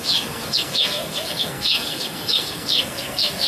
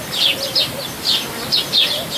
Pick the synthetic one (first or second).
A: first